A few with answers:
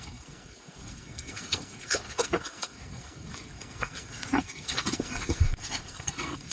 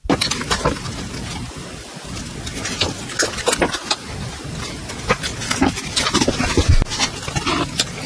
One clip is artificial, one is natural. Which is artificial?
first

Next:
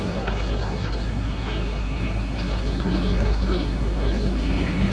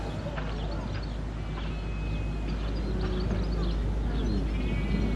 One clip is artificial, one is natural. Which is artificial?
first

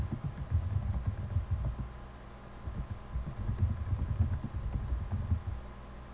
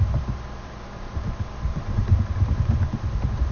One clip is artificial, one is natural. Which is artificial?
second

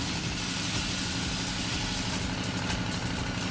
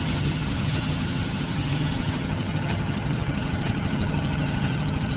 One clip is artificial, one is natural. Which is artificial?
second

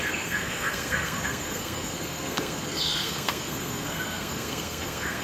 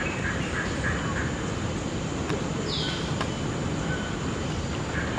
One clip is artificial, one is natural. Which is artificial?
first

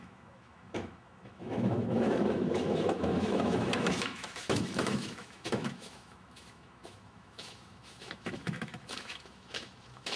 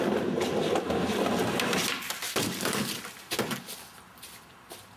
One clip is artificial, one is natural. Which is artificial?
first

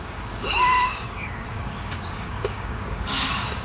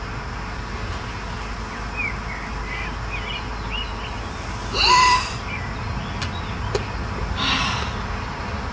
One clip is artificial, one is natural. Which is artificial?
first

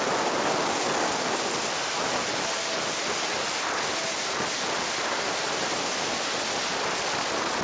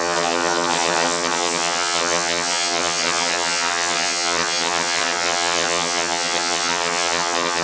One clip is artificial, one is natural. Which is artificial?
second